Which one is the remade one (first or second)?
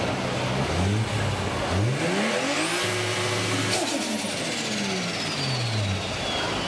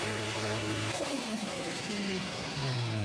second